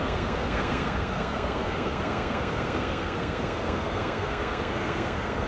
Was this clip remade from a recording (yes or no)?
yes